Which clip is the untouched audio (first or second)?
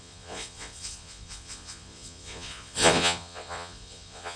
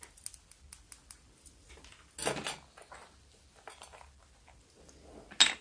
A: second